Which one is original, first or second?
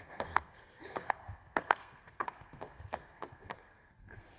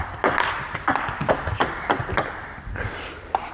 second